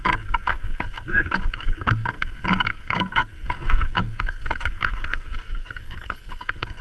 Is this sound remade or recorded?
remade